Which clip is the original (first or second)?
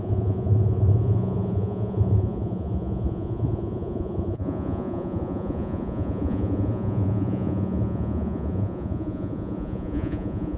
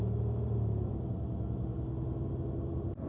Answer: second